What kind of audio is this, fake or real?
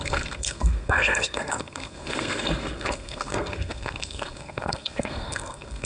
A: fake